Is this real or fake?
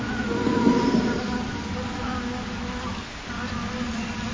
real